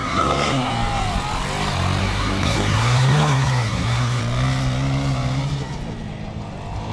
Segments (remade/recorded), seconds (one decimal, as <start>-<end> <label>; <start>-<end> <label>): 0.0-0.7 remade; 0.7-2.0 recorded; 2.0-4.2 remade; 4.2-6.9 recorded